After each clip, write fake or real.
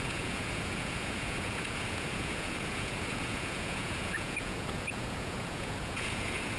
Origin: fake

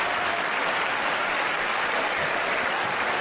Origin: real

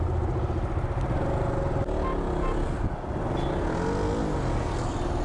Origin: real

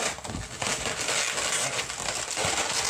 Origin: real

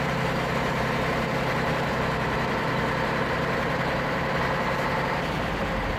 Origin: fake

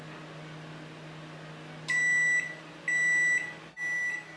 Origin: real